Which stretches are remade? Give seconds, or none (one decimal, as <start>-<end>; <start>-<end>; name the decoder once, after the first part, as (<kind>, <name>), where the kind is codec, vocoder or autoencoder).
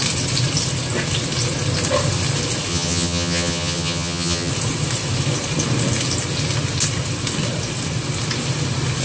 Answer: 2.7-4.5 (vocoder, HiFi-GAN)